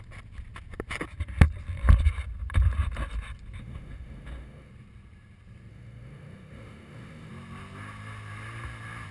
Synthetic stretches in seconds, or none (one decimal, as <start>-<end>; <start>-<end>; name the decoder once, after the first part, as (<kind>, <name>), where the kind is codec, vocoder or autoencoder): 3.6-4.7 (autoencoder, DAC-VAE); 5.7-7.3